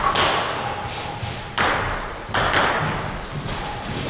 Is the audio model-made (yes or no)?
no